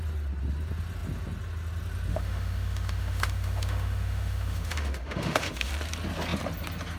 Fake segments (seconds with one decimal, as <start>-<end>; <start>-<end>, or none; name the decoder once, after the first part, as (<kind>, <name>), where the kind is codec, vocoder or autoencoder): 2.1-5.7 (autoencoder, DAC-VAE)